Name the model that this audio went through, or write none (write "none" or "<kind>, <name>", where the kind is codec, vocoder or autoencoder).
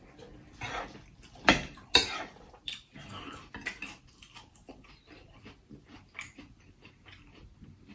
none